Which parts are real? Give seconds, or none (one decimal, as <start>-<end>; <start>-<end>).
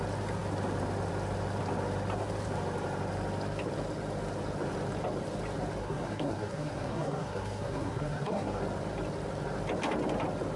0.0-5.8; 8.6-10.6